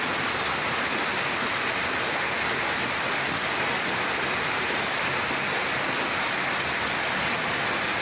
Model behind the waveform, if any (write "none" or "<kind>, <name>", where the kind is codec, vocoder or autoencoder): none